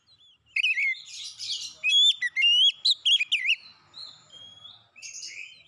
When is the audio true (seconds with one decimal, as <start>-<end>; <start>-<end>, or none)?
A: 0.0-5.7